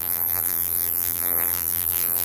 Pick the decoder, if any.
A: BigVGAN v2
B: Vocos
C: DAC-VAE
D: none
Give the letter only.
A